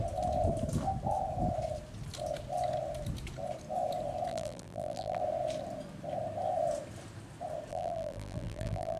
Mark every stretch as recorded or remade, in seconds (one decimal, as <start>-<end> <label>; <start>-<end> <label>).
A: 0.0-4.3 recorded; 4.3-5.2 remade; 5.2-7.7 recorded; 7.7-9.0 remade